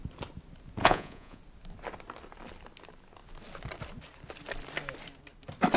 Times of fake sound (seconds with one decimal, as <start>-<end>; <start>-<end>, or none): 0.8-1.4